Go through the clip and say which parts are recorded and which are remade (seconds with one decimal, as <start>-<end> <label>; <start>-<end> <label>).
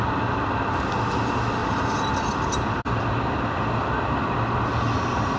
0.0-5.4 recorded